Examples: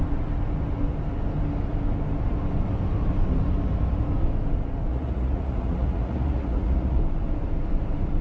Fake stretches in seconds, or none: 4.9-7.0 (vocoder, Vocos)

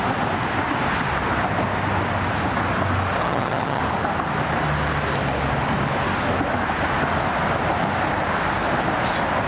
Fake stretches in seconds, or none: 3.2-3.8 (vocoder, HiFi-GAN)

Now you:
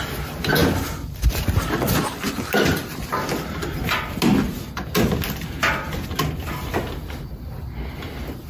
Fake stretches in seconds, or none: none

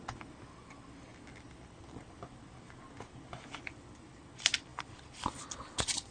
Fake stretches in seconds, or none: 4.7-5.3 (vocoder, BigVGAN v2)